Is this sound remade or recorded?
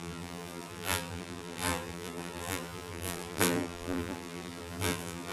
remade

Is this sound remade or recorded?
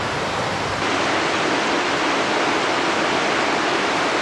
recorded